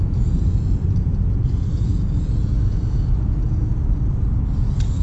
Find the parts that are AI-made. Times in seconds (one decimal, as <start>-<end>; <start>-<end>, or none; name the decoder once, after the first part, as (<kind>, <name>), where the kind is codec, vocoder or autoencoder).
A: 0.0-3.8 (vocoder, Vocos); 4.6-5.0